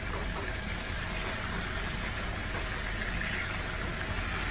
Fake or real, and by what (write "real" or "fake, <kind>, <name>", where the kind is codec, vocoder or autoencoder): real